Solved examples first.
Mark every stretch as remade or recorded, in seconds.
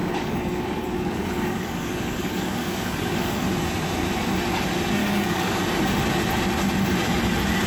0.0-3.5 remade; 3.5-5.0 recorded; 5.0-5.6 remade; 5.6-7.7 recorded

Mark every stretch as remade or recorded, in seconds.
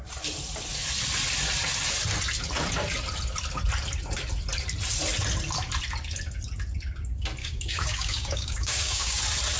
0.0-7.4 recorded; 7.4-9.2 remade; 9.2-9.6 recorded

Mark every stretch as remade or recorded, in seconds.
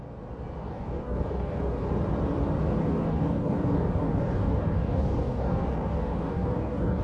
0.0-0.6 recorded; 0.6-1.9 remade; 1.9-2.8 recorded; 2.8-7.0 remade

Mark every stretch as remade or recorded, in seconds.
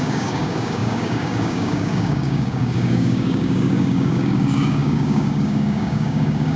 0.0-6.6 remade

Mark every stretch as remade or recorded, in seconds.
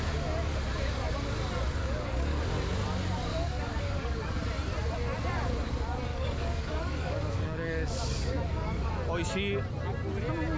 0.0-1.8 recorded; 1.8-2.4 remade; 2.4-3.3 recorded; 3.3-4.4 remade; 4.4-6.1 recorded; 6.1-8.9 remade; 8.9-10.6 recorded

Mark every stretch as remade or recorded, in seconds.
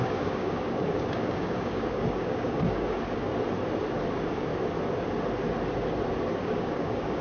0.0-3.3 remade; 3.3-4.1 recorded; 4.1-4.5 remade; 4.5-6.4 recorded; 6.4-7.2 remade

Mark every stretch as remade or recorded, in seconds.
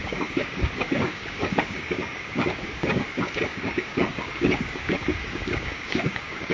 0.0-6.5 remade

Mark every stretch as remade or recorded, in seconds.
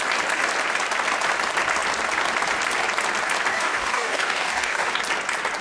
0.0-3.5 recorded; 3.5-4.9 remade; 4.9-5.6 recorded